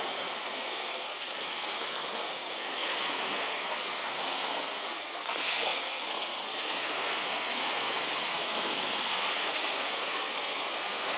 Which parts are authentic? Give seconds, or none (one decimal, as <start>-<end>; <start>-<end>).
none